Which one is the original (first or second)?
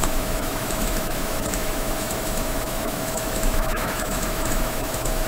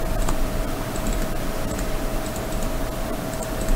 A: second